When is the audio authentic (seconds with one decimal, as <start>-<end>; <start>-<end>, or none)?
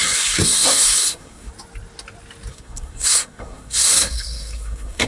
1.5-2.5